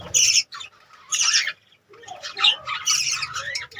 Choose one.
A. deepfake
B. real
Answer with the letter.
B